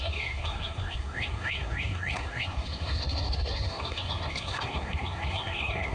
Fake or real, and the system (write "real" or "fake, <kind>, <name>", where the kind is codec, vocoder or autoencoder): fake, codec, SNAC